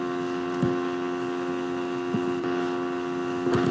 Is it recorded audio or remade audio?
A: recorded